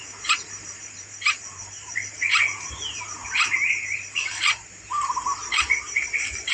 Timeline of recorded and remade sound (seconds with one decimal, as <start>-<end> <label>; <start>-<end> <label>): 0.0-6.5 remade